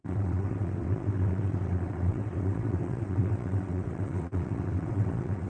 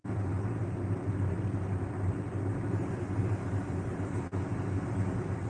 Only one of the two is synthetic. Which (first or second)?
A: first